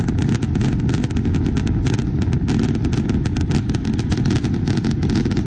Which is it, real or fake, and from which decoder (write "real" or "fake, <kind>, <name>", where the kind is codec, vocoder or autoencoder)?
real